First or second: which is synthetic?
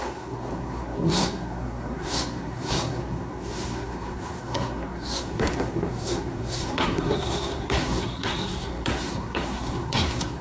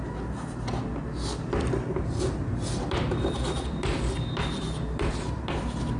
first